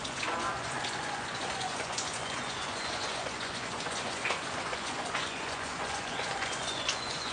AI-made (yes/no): yes